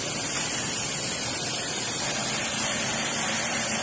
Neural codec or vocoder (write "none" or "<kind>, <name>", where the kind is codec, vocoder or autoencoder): vocoder, BigVGAN v2